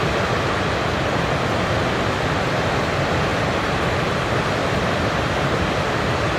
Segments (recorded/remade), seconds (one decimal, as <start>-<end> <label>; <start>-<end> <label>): 0.0-3.3 recorded; 3.3-4.0 remade; 4.0-4.6 recorded; 4.6-5.6 remade; 5.6-6.4 recorded